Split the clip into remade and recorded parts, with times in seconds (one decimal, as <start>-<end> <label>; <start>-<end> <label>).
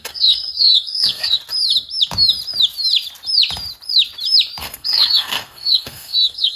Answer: 0.0-1.4 remade; 1.4-4.6 recorded; 4.6-6.6 remade